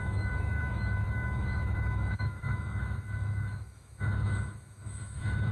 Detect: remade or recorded remade